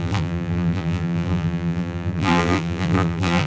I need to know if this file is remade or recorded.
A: remade